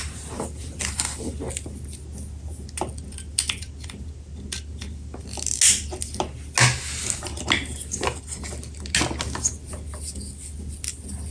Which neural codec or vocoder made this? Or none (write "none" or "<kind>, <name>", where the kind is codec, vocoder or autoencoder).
none